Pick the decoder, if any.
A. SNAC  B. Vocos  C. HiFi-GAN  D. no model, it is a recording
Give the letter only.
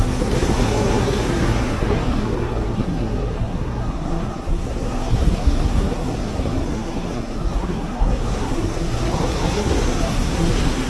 A